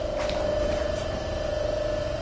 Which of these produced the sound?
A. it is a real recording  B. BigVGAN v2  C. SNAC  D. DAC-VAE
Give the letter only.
B